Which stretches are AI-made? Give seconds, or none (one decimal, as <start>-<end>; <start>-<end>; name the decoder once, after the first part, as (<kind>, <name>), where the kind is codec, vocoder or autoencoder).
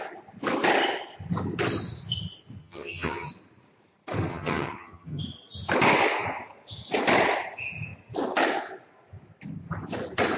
2.6-3.3 (vocoder, HiFi-GAN); 4.3-5.2